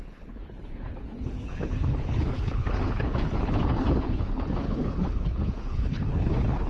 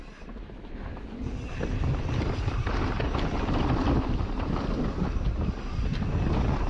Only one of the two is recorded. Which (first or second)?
second